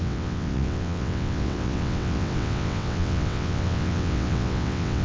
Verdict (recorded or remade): remade